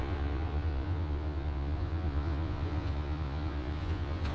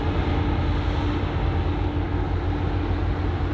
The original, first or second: second